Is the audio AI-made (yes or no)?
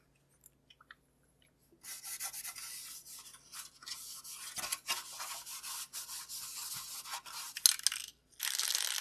no